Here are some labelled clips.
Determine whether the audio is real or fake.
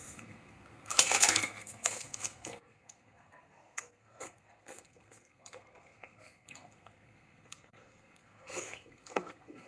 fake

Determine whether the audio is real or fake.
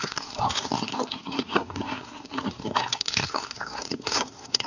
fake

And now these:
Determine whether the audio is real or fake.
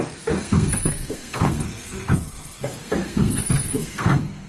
fake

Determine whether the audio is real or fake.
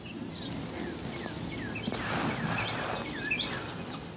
real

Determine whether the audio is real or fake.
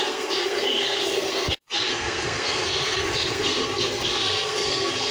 fake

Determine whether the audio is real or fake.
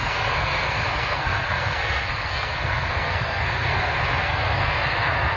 fake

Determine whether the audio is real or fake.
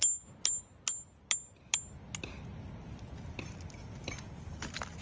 real